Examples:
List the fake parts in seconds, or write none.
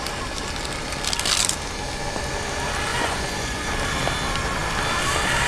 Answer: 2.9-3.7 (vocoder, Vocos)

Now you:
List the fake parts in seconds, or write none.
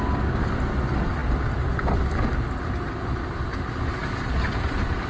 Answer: none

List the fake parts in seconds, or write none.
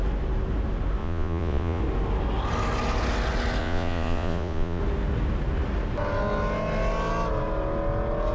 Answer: 1.0-1.8 (vocoder, Vocos); 3.6-4.8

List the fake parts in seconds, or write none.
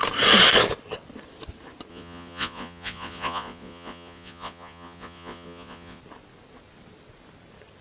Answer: 1.9-6.0 (vocoder, Vocos)